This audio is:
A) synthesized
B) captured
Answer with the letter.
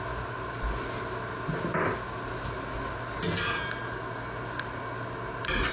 B